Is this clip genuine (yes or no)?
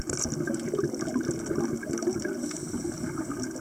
yes